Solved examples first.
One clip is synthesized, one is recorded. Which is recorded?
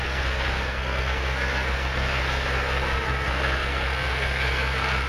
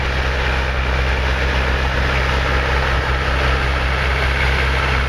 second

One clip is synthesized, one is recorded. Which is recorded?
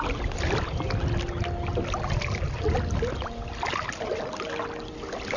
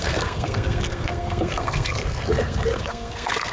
first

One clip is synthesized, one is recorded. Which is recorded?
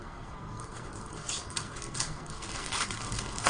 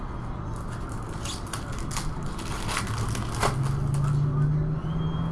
second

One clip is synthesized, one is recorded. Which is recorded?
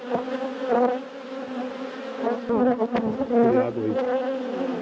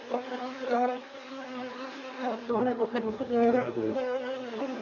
first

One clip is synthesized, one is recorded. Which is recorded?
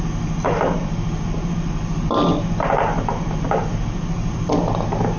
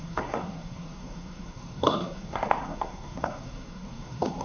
first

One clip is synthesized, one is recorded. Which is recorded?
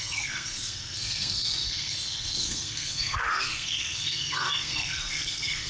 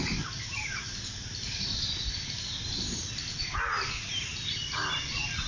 second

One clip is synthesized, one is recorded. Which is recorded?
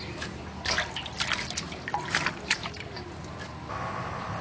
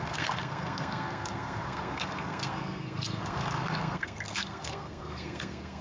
first